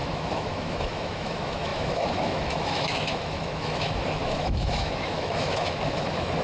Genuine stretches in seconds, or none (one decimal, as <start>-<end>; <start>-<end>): none